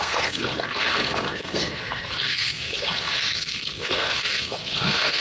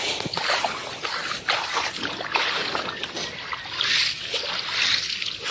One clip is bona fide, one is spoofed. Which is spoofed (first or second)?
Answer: first